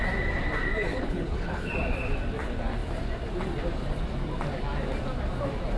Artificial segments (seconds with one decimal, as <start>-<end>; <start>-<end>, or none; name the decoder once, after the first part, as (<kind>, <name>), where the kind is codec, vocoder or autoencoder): 0.9-1.7 (codec, HILCodec)